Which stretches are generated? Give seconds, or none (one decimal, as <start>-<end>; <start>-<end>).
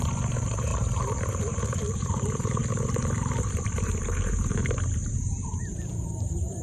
0.0-0.7; 1.3-2.6; 3.7-4.6; 5.2-6.6